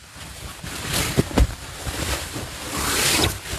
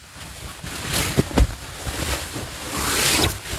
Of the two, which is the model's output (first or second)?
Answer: first